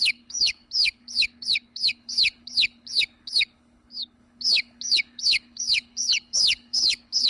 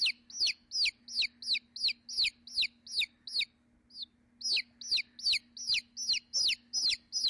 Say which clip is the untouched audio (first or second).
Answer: second